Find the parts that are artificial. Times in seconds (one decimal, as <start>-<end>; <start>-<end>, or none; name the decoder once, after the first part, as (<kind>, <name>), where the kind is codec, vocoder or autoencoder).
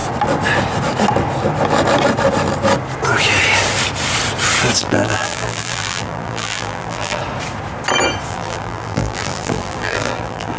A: 4.8-7.2 (vocoder, BigVGAN v2); 8.3-10.6